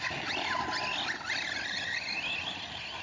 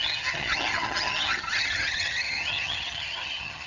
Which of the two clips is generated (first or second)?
second